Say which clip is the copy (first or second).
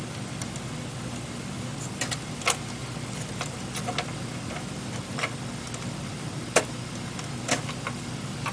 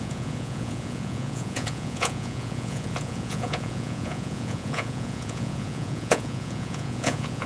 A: second